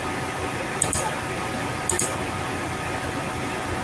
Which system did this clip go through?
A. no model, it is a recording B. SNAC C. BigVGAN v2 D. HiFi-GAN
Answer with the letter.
A